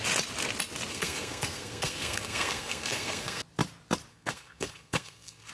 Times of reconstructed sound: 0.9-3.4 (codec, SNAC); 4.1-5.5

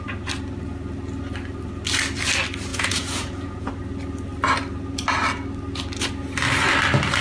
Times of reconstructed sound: 2.7-3.7 (vocoder, Vocos)

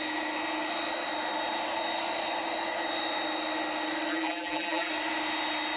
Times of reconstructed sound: 4.1-4.9 (vocoder, BigVGAN v2)

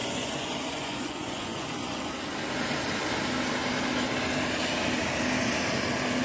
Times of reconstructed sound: 0.0-2.1 (vocoder, Vocos)

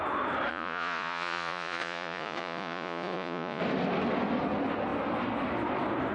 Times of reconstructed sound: 0.5-3.6 (vocoder, Vocos)